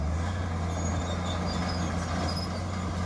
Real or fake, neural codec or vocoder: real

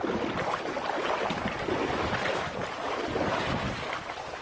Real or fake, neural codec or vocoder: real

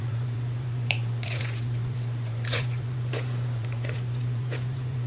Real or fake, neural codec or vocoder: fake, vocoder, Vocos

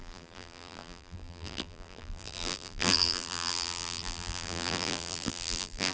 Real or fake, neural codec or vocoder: fake, vocoder, BigVGAN v2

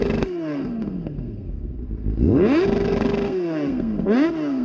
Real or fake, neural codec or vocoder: fake, codec, SNAC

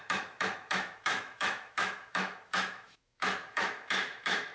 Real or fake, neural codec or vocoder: fake, autoencoder, DAC-VAE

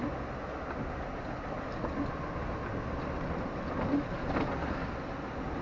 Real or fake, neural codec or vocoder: real